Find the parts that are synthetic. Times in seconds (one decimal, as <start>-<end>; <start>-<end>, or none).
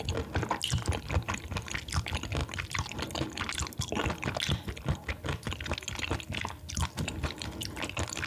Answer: none